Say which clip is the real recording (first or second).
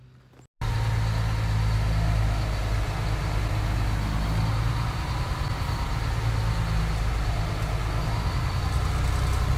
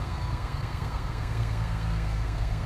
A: first